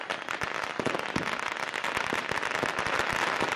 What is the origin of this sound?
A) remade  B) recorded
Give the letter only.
B